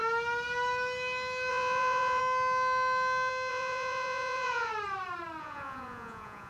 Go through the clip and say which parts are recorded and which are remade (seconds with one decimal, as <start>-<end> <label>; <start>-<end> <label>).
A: 0.0-1.5 recorded; 1.5-2.2 remade; 2.2-3.5 recorded; 3.5-4.7 remade; 4.7-5.4 recorded; 5.4-6.5 remade